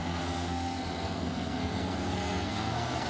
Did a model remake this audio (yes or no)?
yes